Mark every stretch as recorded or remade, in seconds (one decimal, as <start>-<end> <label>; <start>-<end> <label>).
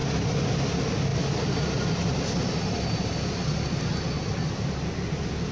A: 0.0-5.5 recorded